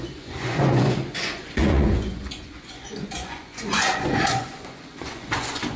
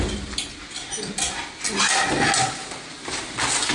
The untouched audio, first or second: second